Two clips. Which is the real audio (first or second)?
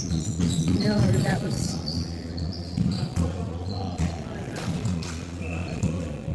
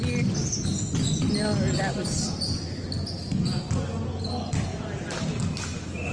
second